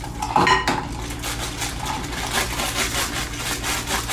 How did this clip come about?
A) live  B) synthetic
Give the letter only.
A